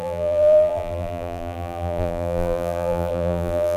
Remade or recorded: remade